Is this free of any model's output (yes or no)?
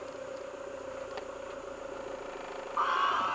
yes